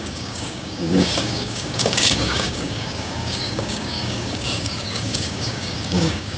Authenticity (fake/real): fake